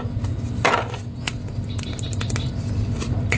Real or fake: real